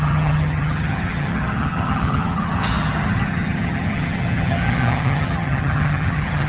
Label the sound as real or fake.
fake